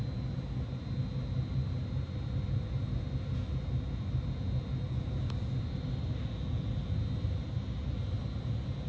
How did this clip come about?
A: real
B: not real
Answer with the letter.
A